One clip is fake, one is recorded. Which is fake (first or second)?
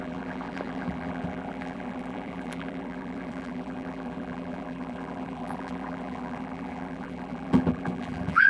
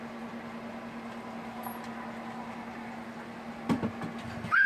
first